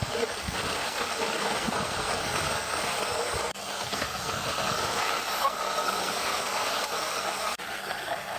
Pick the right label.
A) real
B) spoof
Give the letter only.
B